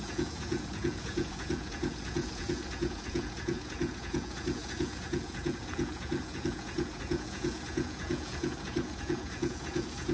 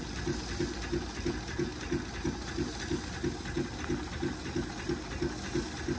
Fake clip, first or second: first